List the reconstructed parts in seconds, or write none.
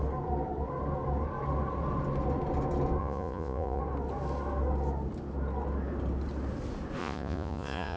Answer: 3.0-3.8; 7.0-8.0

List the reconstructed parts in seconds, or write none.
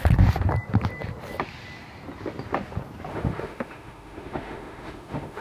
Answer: 3.1-5.4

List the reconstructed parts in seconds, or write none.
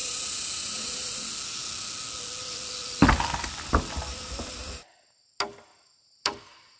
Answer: none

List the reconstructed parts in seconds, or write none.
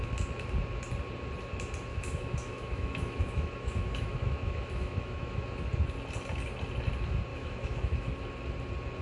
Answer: 1.9-5.6; 7.3-8.1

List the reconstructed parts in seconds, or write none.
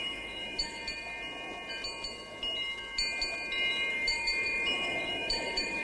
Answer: 0.0-0.8; 3.9-5.8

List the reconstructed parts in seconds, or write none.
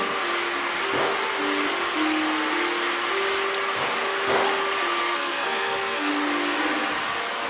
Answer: 5.0-6.1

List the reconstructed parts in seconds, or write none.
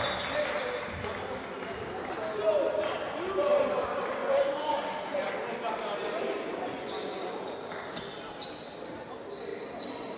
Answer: 4.2-5.3; 6.7-7.5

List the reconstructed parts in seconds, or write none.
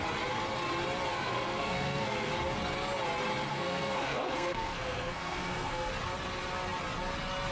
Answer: 1.1-2.3; 3.5-5.9